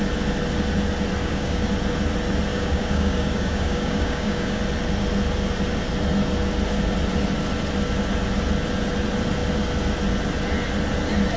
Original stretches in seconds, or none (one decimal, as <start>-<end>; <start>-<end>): 0.0-1.2; 1.7-2.5; 4.6-11.4